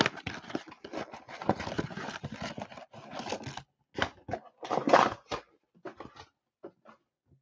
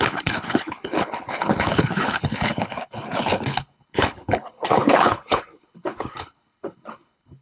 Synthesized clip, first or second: second